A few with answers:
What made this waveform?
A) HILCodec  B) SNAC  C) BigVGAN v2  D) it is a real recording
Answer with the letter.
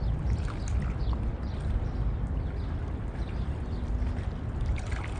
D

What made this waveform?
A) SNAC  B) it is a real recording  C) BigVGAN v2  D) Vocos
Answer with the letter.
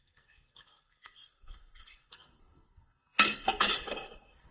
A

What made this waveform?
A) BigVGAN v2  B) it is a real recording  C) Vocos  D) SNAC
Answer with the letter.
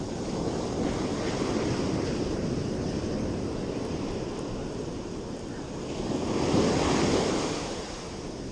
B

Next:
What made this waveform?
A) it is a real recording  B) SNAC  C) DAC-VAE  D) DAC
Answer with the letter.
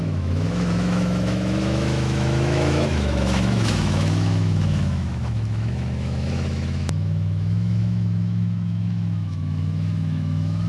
C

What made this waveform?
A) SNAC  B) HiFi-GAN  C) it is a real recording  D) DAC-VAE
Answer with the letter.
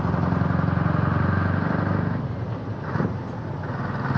C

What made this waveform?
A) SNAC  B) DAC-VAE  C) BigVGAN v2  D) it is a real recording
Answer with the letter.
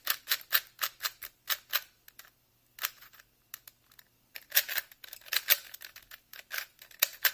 D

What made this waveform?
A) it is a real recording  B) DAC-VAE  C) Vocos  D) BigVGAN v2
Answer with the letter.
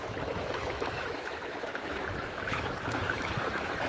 B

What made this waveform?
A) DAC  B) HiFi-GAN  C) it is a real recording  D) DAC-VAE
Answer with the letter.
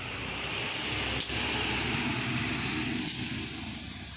C